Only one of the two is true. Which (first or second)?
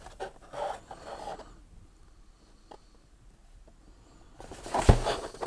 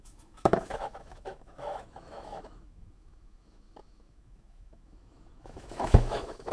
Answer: first